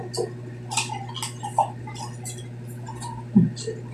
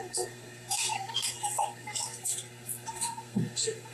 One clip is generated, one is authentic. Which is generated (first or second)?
second